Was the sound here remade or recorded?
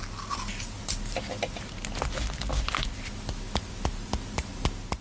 recorded